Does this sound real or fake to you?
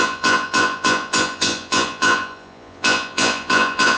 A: fake